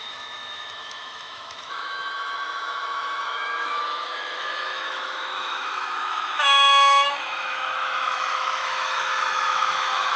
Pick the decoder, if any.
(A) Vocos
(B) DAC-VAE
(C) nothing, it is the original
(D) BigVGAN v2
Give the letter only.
B